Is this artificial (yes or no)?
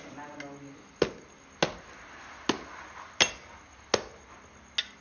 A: no